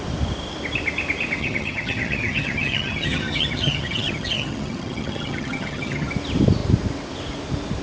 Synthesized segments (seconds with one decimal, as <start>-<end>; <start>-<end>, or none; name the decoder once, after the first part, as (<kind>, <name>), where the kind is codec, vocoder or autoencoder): 1.4-6.1 (vocoder, HiFi-GAN)

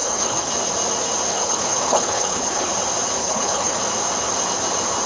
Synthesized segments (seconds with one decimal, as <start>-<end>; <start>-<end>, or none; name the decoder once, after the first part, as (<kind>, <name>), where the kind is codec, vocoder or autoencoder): 0.0-0.5 (codec, HILCodec); 1.3-2.7; 3.2-3.8

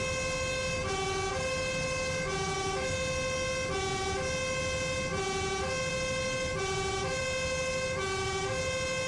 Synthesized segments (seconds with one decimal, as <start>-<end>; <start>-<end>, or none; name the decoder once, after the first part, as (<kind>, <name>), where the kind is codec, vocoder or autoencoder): none

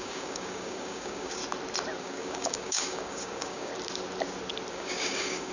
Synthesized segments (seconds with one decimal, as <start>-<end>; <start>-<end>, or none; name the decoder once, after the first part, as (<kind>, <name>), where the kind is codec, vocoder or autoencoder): 0.0-1.4 (codec, DAC); 2.0-3.7; 4.7-5.5

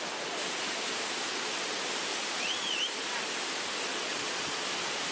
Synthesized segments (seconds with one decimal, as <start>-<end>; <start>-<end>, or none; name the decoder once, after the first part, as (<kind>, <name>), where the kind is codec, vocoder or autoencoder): 2.1-2.8 (vocoder, Vocos); 3.9-5.1

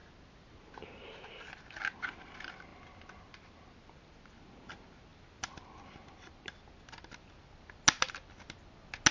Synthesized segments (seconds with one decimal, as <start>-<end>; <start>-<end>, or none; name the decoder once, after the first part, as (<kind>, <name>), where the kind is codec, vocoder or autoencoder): none